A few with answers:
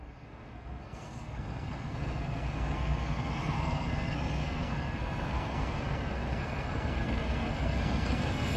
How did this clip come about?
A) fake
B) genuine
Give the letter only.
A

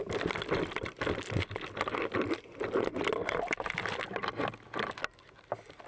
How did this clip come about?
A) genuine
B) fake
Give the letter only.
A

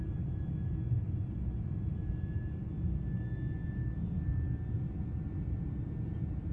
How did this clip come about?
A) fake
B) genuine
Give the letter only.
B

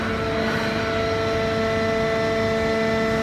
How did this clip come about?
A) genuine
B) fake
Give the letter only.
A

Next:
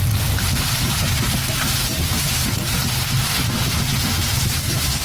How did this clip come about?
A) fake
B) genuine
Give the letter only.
A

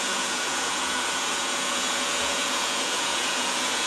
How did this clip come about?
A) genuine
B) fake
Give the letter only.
B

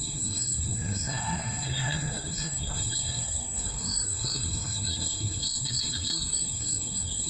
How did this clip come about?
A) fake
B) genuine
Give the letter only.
A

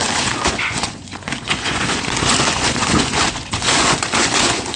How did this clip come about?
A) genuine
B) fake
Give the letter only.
B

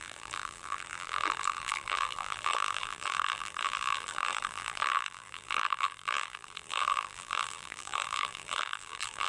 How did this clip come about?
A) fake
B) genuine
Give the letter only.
A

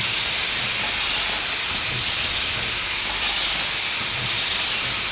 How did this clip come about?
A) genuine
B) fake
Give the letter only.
A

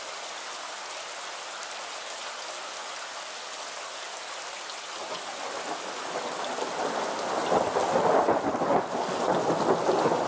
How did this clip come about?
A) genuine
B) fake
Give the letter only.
A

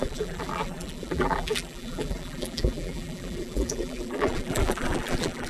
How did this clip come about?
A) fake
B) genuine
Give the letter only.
A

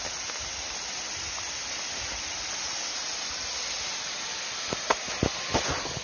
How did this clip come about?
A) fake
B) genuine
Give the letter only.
B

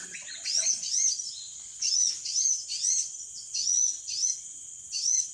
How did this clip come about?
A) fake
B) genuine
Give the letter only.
A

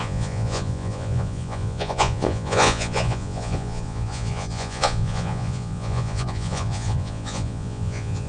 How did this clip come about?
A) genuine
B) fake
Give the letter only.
B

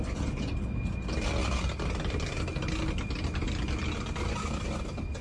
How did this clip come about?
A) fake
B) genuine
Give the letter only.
B